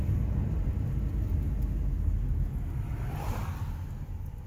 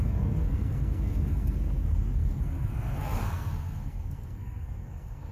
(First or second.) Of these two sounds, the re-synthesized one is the second